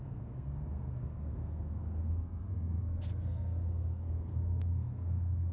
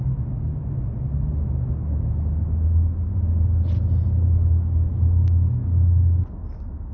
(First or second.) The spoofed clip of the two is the first